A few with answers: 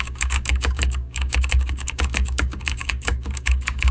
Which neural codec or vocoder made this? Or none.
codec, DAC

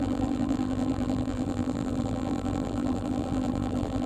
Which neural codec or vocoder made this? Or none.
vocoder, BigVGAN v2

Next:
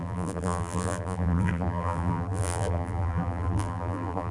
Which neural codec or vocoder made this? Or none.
vocoder, BigVGAN v2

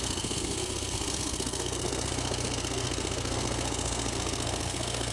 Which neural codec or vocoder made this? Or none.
codec, SNAC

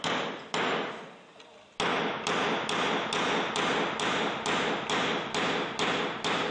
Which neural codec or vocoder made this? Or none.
none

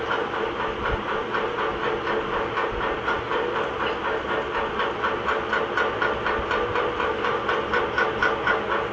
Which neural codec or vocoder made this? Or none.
none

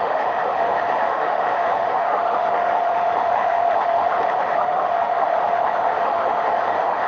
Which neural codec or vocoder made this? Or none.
autoencoder, DAC-VAE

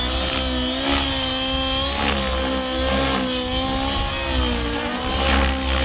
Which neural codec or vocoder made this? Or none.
none